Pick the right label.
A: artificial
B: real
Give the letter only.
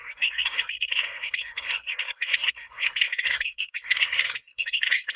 A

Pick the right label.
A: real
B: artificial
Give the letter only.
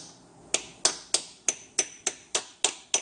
A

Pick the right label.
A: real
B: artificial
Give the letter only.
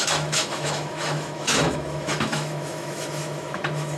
B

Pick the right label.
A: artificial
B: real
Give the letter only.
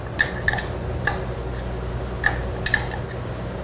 B